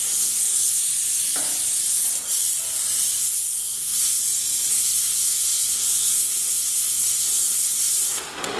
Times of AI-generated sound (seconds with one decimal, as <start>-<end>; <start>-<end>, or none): 0.0-0.8; 3.2-4.2; 4.7-8.6

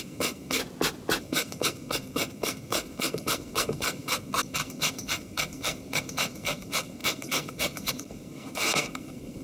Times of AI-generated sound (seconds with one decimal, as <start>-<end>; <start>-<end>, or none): 0.0-0.6; 1.2-9.4

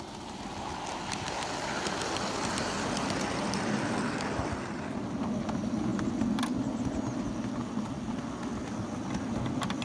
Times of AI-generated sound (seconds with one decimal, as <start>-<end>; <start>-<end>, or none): none

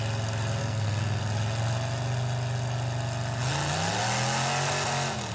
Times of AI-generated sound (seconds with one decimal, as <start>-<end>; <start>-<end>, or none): 0.6-1.2

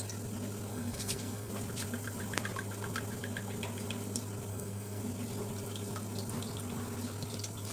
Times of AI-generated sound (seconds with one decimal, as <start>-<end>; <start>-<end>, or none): 0.7-1.5; 4.5-5.0

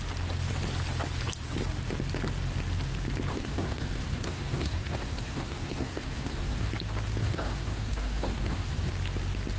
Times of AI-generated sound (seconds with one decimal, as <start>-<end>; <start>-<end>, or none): 3.3-6.7; 7.2-8.9

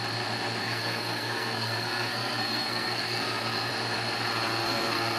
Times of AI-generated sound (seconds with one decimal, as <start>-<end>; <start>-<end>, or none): 0.6-3.7; 4.6-5.2

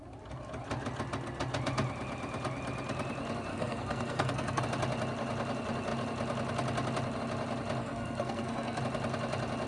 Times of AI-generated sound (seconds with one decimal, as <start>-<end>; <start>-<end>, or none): 3.5-4.6; 7.8-8.8